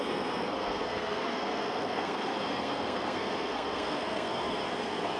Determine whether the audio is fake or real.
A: fake